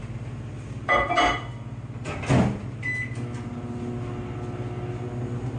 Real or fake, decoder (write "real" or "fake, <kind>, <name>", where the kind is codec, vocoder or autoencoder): real